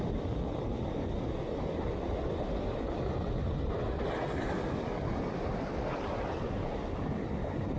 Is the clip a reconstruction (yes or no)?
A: no